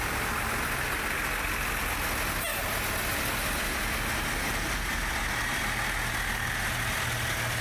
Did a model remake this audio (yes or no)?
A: no